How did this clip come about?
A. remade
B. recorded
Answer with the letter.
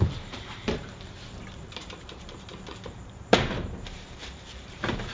A